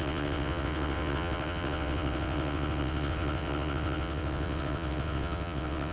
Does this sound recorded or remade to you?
remade